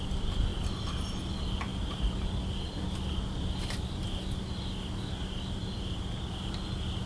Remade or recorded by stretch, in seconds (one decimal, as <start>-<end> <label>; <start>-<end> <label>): 0.0-7.1 recorded